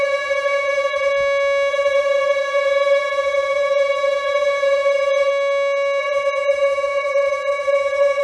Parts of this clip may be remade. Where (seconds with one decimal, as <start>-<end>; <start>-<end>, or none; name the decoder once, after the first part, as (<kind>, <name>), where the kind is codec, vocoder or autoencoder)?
0.0-1.1 (vocoder, Vocos); 1.7-5.3; 6.0-8.2